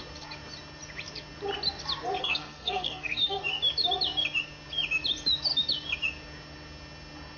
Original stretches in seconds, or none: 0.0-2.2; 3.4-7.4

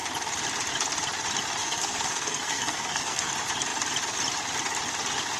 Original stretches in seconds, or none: 0.0-1.6; 3.3-5.4

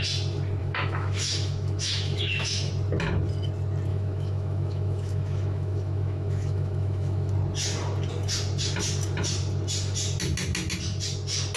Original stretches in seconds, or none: 0.0-0.6; 2.7-3.9; 7.3-11.6

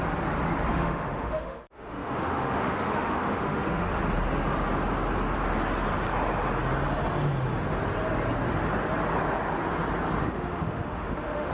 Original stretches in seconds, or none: 0.0-0.7; 3.9-10.2

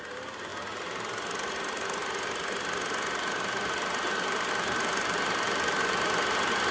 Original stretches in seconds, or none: 0.0-6.7

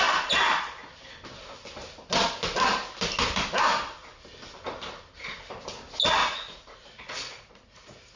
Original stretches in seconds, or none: 0.0-6.2

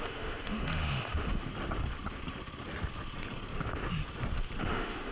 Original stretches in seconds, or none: 1.5-4.6